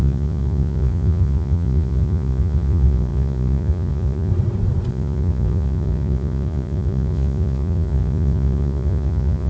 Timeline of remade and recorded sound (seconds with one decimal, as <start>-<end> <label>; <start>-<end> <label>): 0.0-4.3 remade; 4.3-4.9 recorded; 4.9-9.5 remade